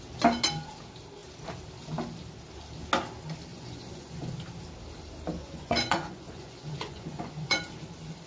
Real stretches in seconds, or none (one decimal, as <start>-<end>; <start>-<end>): 0.0-3.5; 4.3-5.4; 7.6-8.3